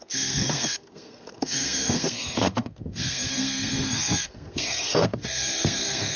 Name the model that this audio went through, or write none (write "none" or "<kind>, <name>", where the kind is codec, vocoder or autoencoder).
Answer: codec, SNAC